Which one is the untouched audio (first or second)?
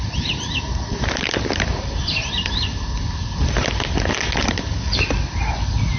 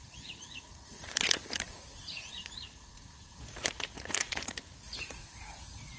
first